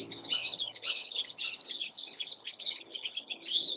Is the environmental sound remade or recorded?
remade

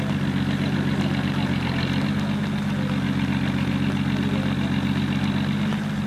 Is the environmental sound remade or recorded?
recorded